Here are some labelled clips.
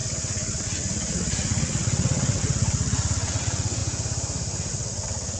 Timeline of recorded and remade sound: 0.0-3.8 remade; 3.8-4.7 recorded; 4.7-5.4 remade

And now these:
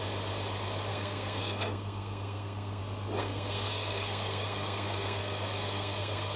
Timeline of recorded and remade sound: 0.0-0.9 recorded; 0.9-2.8 remade; 2.8-3.2 recorded; 3.2-6.4 remade

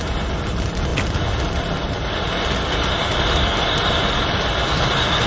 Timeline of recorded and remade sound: 0.0-5.3 recorded

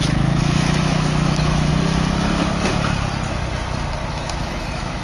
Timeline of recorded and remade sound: 0.0-1.7 remade; 1.7-4.1 recorded; 4.1-5.0 remade

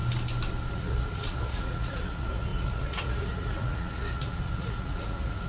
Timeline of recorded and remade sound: 0.0-0.7 recorded; 0.7-5.5 remade